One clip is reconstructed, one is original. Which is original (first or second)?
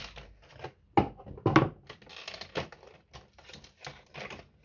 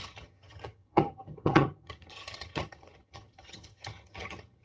first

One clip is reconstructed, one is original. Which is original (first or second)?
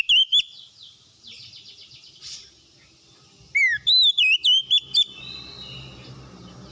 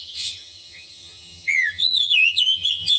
first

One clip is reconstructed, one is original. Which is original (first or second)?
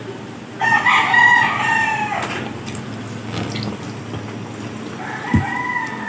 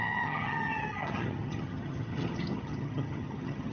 first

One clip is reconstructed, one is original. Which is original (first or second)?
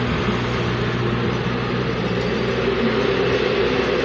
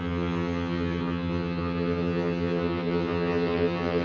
first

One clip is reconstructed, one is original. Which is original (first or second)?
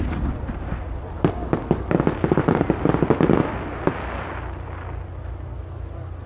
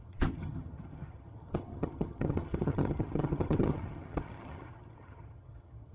first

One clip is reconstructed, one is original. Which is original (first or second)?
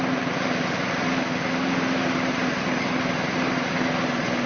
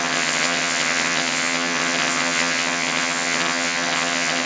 first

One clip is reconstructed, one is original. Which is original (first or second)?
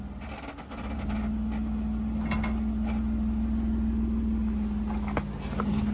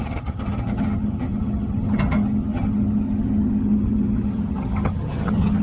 first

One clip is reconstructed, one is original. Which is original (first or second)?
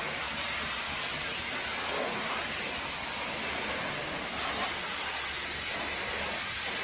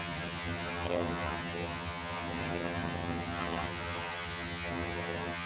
first